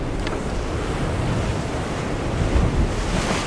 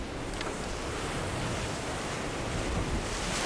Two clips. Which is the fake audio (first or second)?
first